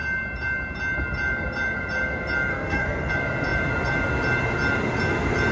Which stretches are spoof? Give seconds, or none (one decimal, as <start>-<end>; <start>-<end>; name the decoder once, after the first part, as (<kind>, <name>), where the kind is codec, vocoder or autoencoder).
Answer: 2.5-3.1 (codec, SNAC)